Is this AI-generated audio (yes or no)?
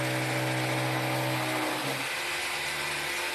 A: no